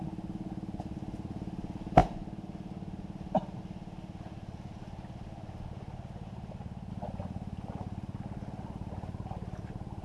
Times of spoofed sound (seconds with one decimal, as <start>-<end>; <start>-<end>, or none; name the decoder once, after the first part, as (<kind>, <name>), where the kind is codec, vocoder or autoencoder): none